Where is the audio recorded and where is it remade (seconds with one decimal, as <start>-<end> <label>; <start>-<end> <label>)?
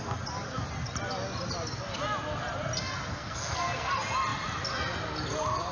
0.0-3.1 recorded; 3.1-3.9 remade; 3.9-5.7 recorded